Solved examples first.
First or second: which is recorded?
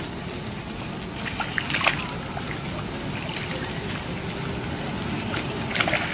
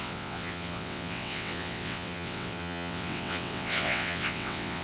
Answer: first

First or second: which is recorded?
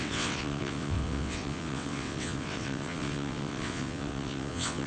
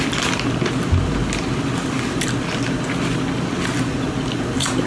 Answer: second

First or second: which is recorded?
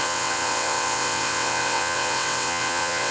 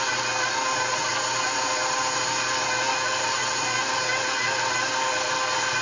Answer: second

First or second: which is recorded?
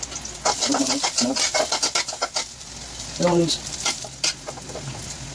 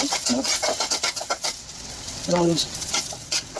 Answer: first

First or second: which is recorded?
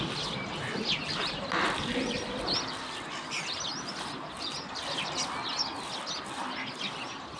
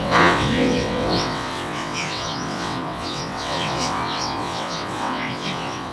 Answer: first